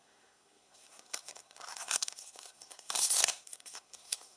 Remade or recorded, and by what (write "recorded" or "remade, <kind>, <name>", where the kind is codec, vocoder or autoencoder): remade, codec, SNAC